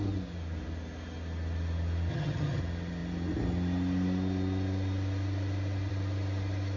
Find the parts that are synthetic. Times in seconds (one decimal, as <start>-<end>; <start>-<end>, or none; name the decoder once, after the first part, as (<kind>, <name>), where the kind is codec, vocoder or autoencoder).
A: 2.1-2.6 (vocoder, HiFi-GAN)